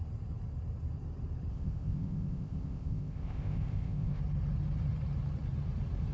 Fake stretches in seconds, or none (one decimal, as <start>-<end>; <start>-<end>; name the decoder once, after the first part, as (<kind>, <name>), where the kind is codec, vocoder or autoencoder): 1.5-4.2 (codec, ZipCodec)